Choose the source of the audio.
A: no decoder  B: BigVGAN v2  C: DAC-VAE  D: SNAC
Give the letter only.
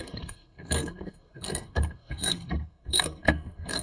D